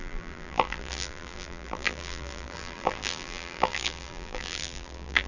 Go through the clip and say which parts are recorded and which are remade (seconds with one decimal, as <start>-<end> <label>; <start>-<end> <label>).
0.0-5.3 remade